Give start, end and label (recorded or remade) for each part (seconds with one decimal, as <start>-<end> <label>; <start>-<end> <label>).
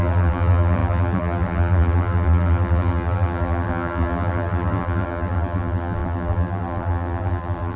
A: 0.0-7.8 remade